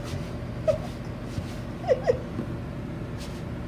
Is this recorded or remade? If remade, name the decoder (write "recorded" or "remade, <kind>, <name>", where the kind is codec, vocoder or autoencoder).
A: recorded